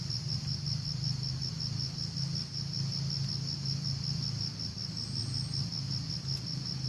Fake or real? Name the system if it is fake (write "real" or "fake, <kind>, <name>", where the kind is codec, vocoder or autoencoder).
real